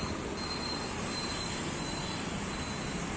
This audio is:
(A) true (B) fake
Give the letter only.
A